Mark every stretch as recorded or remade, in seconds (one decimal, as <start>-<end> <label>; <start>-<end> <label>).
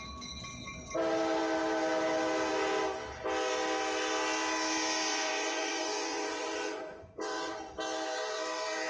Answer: 0.0-5.1 recorded; 5.1-7.6 remade; 7.6-8.9 recorded